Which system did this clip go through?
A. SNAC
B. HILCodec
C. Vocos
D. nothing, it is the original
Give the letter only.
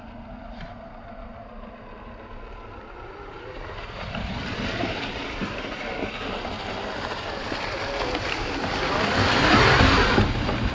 D